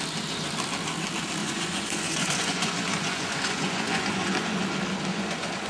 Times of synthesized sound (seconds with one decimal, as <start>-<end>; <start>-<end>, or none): 1.4-4.6; 5.1-5.7